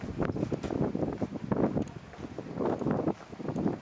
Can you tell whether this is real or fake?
real